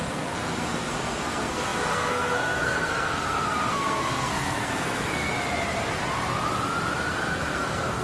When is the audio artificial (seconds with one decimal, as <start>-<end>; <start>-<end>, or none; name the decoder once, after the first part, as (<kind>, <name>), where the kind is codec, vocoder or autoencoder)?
0.0-5.3 (codec, SNAC); 7.1-8.0